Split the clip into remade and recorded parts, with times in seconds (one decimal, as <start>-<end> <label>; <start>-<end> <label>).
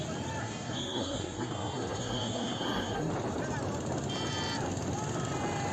0.0-0.4 recorded; 0.4-3.1 remade; 3.1-5.7 recorded